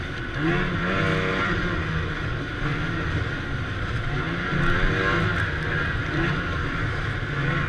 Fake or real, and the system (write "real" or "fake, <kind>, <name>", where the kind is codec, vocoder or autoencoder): real